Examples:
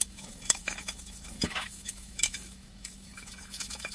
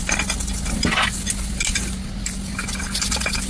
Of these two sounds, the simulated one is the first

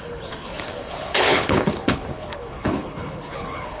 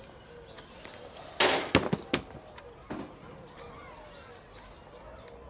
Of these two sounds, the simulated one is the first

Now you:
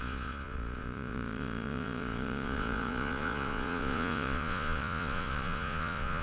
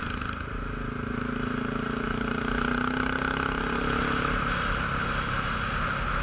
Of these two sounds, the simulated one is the first